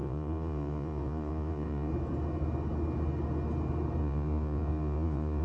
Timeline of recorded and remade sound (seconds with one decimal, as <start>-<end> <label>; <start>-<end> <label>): 0.0-1.9 remade; 1.9-4.0 recorded; 4.0-5.4 remade